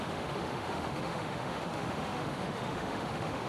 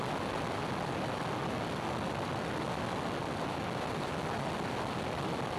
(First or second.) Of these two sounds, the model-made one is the first